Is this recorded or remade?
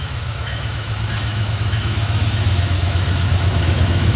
remade